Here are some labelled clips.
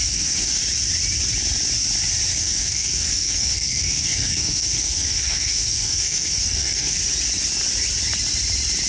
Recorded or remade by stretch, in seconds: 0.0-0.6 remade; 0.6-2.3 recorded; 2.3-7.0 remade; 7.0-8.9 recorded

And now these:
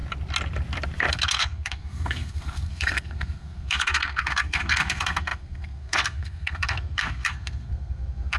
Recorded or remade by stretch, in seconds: 0.0-1.1 recorded; 1.1-8.4 remade

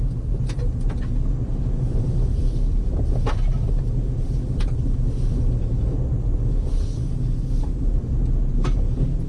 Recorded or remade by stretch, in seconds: 0.0-9.3 recorded

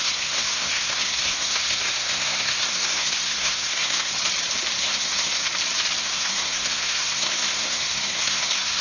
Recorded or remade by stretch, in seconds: 0.0-4.1 remade; 4.1-4.8 recorded; 4.8-5.4 remade; 5.4-6.0 recorded; 6.0-8.8 remade

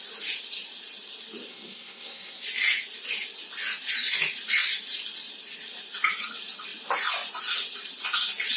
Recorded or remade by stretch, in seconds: 0.0-1.5 recorded; 1.5-2.4 remade; 2.4-8.6 recorded

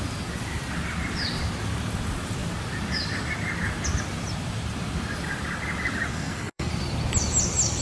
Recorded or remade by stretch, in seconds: 0.0-6.1 recorded; 6.1-6.7 remade; 6.7-7.8 recorded